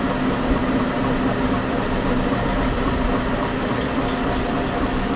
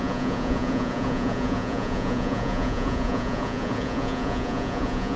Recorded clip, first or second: first